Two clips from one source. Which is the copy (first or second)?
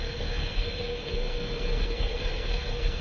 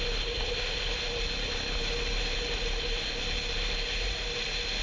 first